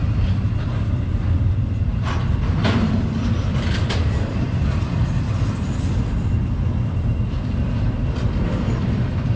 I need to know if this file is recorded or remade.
remade